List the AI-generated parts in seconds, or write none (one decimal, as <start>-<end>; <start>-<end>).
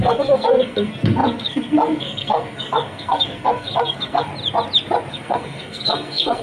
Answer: 0.0-4.3; 5.1-6.4